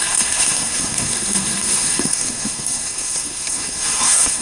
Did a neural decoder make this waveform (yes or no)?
yes